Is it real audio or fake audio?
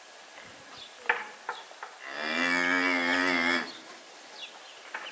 real